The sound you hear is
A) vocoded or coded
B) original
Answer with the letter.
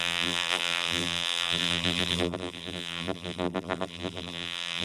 A